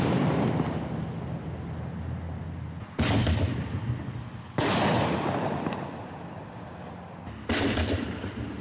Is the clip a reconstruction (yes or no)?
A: no